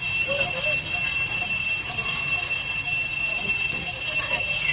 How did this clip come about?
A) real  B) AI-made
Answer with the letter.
A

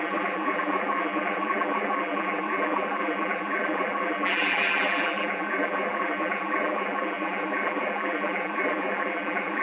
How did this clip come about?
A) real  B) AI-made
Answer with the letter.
B